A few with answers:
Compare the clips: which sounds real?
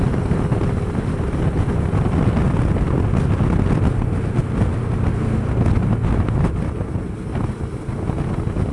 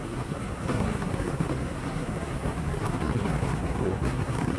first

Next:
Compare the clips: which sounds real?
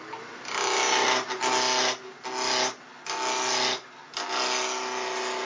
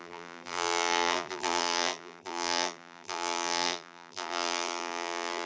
first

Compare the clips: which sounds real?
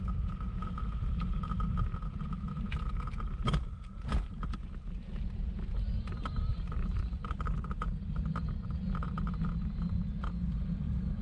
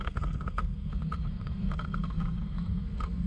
first